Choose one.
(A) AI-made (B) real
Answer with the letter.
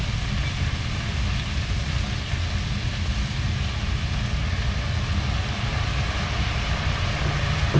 B